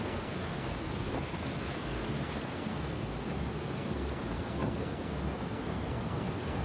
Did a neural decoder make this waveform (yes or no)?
yes